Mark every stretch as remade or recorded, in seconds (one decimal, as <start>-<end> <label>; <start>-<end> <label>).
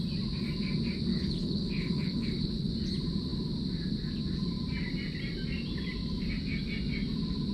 0.0-1.1 recorded; 1.1-2.7 remade; 2.7-7.5 recorded